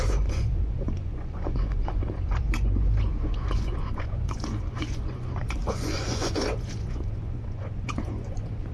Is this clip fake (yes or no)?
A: yes